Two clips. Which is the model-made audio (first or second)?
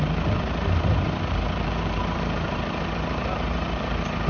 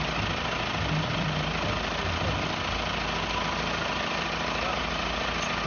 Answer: first